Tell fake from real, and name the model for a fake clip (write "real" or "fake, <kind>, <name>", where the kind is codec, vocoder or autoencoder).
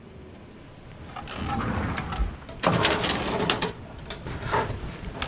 real